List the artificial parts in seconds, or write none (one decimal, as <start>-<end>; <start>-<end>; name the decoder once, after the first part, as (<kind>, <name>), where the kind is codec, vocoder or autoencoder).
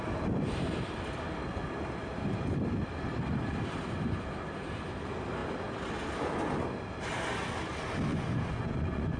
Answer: 8.1-9.2 (vocoder, Vocos)